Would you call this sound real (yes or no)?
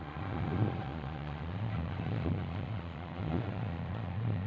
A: no